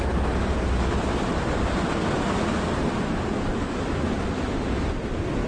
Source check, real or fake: real